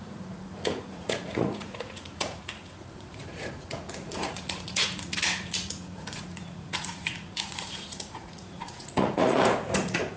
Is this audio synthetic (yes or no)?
yes